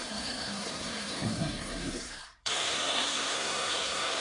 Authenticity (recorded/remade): remade